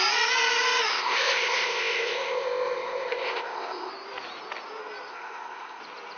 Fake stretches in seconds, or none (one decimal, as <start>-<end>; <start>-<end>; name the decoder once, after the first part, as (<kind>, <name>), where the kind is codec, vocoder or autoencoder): 0.9-3.9 (codec, ZipCodec); 5.1-5.8